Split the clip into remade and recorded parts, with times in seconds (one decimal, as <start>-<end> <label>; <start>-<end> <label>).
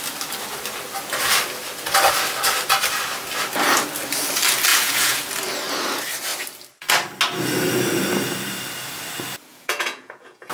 0.0-4.7 recorded; 4.7-5.3 remade; 5.3-9.5 recorded; 9.5-10.5 remade